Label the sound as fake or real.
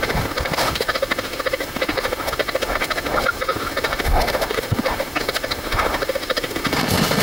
fake